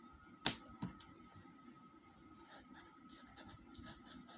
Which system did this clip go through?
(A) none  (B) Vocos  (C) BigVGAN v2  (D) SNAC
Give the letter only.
A